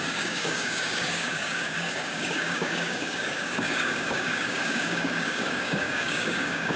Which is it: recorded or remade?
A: remade